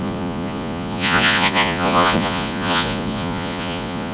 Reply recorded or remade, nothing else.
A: remade